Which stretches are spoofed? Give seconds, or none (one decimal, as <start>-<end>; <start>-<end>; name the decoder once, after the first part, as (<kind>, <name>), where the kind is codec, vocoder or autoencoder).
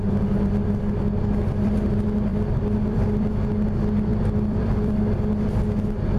2.3-3.1 (vocoder, BigVGAN v2); 4.1-5.3